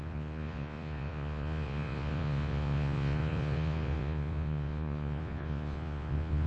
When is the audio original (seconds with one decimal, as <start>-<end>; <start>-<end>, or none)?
none